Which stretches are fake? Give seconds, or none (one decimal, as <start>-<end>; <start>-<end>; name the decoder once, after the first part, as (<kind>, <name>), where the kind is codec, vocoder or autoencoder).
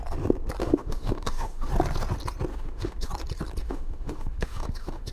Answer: 0.6-1.7 (autoencoder, DAC-VAE); 2.5-3.1; 3.6-5.1